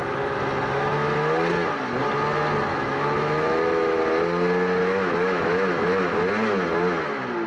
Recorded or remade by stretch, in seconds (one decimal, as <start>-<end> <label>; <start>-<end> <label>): 0.0-2.7 recorded; 2.7-4.0 remade; 4.0-4.8 recorded; 4.8-6.3 remade; 6.3-7.5 recorded